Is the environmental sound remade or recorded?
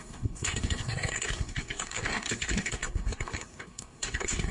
remade